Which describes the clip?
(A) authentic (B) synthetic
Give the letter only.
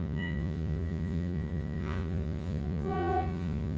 B